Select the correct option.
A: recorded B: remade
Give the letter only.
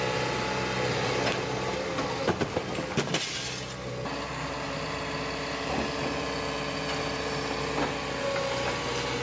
A